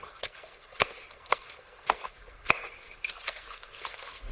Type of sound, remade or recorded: remade